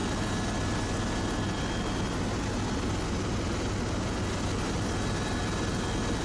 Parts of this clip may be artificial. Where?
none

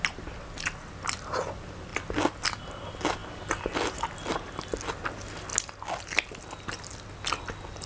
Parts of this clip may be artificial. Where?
none

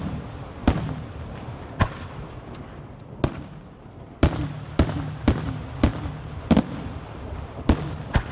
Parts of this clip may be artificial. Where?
none

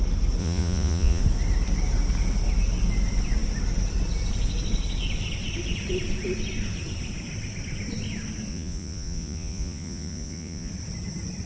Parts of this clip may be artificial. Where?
0.4-1.2 (vocoder, Vocos); 8.5-10.7

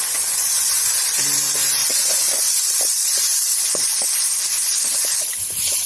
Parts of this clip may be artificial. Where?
0.0-1.0 (vocoder, Vocos); 1.8-2.4; 3.5-5.0

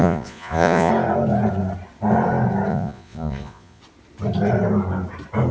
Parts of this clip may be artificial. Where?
0.0-0.9 (vocoder, Vocos); 2.7-3.8